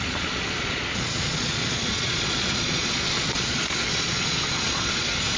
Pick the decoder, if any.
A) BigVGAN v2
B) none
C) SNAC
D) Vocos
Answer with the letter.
D